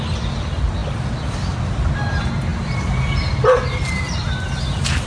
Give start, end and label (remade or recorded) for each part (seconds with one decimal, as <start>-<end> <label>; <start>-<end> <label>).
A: 0.0-5.1 recorded